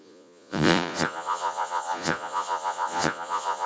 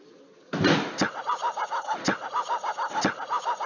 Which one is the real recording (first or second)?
second